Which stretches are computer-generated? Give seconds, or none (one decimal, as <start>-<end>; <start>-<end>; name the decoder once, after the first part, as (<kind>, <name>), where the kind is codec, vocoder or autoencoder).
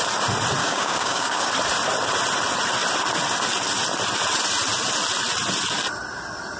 0.6-1.5 (codec, DAC)